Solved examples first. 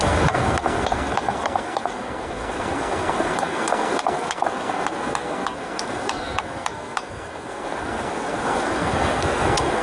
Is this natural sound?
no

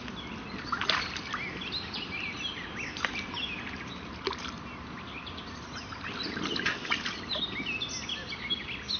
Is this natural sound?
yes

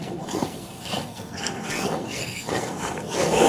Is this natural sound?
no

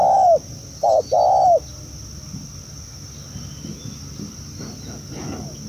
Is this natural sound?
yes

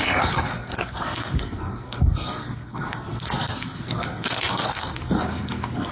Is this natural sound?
no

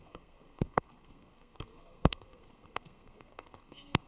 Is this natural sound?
no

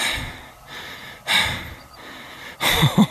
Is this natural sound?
yes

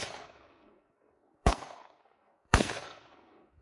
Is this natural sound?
no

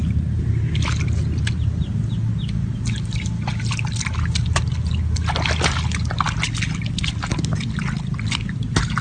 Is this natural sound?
yes